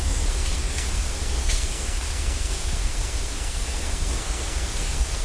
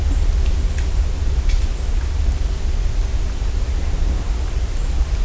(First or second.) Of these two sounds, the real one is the second